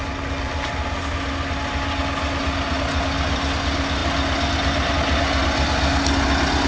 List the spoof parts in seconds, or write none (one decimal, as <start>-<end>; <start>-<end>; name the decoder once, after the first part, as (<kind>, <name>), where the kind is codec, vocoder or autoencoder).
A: none